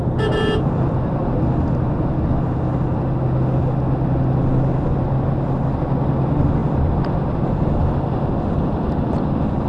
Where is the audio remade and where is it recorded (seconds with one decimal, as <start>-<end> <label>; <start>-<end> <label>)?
0.0-9.7 recorded